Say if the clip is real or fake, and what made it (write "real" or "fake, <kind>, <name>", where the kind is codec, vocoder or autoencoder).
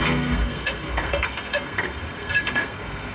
fake, codec, SNAC